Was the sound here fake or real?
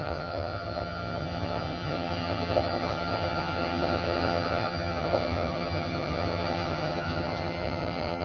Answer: fake